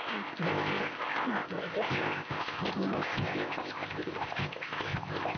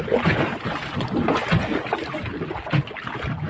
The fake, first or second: first